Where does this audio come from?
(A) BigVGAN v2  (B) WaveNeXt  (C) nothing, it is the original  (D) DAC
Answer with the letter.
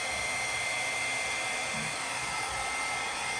C